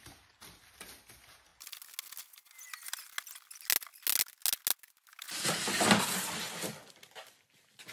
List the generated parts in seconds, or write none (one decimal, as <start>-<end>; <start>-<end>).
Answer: none